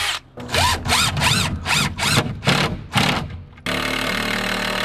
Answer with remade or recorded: recorded